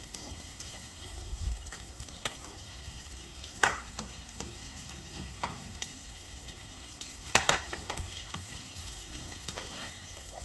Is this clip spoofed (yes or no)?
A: yes